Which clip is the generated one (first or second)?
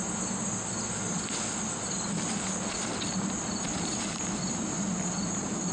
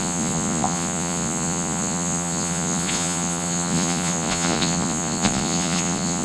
second